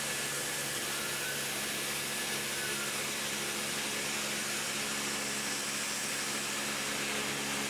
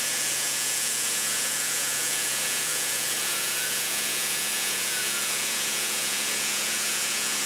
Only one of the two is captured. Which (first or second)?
first